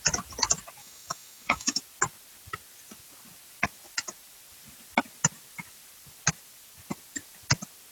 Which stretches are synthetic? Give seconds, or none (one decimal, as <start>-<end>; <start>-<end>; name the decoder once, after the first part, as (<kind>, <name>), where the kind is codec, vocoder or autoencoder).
0.8-1.8 (autoencoder, DAC-VAE)